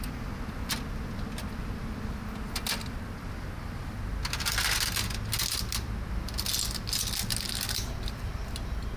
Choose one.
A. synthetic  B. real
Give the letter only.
B